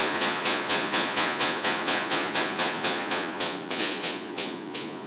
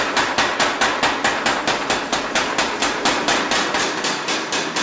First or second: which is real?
second